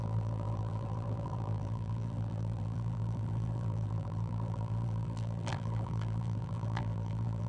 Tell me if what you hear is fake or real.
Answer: fake